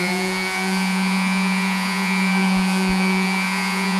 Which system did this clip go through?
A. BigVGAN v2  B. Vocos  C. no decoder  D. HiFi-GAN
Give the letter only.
B